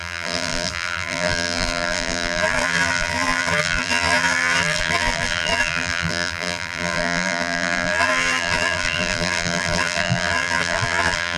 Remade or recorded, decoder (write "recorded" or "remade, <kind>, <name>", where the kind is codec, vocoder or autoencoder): remade, vocoder, BigVGAN v2